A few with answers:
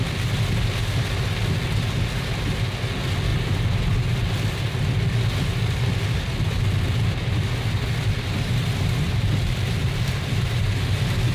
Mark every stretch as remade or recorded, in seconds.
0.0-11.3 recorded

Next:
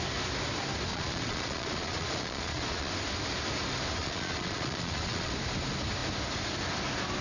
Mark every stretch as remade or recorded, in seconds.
0.0-0.9 recorded; 0.9-2.9 remade; 2.9-4.0 recorded; 4.0-5.3 remade; 5.3-7.2 recorded

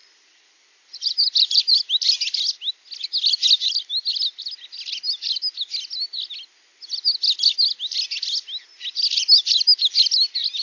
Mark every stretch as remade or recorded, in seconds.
0.0-1.6 remade; 1.6-10.6 recorded

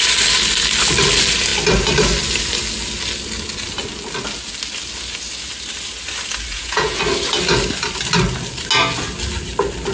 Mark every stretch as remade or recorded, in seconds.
0.0-6.5 recorded; 6.5-7.0 remade; 7.0-9.9 recorded